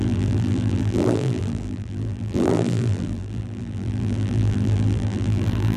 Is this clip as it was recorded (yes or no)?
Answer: no